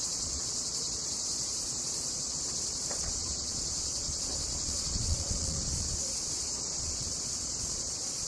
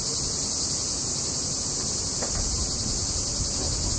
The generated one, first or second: first